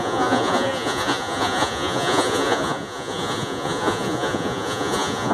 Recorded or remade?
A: remade